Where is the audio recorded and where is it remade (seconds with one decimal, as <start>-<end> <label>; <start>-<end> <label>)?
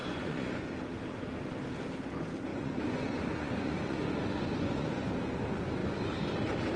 0.0-0.7 remade; 0.7-2.5 recorded; 2.5-5.1 remade; 5.1-6.8 recorded